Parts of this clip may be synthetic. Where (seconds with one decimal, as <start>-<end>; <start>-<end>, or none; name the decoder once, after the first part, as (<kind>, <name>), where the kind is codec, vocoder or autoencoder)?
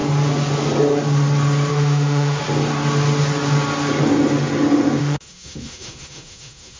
1.7-2.4 (autoencoder, DAC-VAE); 5.0-6.8